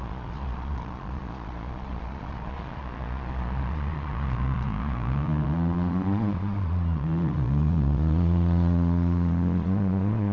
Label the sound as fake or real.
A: fake